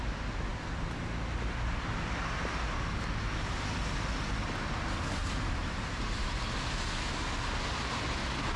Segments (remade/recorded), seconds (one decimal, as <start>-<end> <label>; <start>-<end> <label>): 0.0-5.2 recorded; 5.2-6.3 remade; 6.3-8.6 recorded